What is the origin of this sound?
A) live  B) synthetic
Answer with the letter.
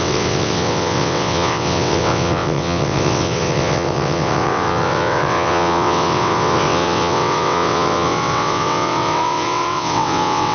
B